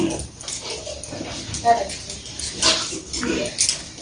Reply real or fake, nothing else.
real